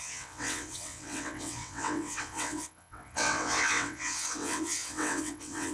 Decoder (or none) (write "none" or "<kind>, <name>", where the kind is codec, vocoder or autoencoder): vocoder, WaveNeXt